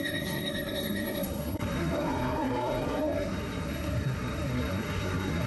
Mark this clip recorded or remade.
remade